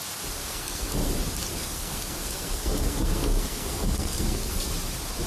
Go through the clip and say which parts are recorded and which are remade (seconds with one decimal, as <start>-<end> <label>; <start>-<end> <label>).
0.0-0.4 recorded; 0.4-1.1 remade; 1.1-1.5 recorded; 1.5-4.7 remade; 4.7-5.3 recorded